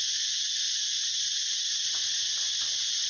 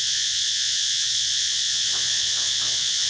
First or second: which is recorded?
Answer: first